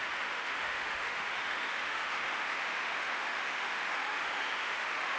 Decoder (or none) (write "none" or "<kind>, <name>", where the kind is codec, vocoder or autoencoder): autoencoder, DAC-VAE